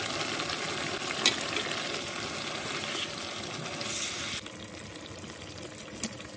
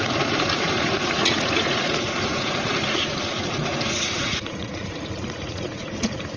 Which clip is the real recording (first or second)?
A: first